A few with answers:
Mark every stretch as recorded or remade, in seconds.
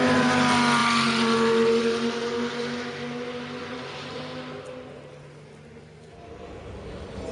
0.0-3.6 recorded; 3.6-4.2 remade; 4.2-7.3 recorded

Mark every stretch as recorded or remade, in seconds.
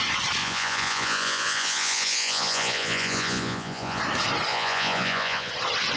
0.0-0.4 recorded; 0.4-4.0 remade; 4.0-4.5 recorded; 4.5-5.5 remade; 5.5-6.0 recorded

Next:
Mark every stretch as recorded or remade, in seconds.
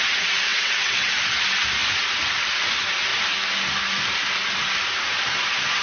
0.0-0.5 recorded; 0.5-1.1 remade; 1.1-5.8 recorded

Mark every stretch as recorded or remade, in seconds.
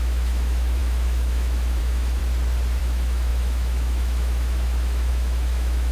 0.0-2.2 remade; 2.2-2.8 recorded; 2.8-5.9 remade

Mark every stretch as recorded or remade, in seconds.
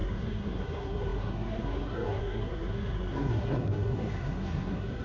0.0-5.0 remade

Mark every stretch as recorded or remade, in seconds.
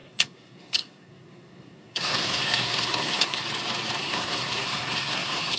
0.0-3.4 remade; 3.4-4.0 recorded; 4.0-5.6 remade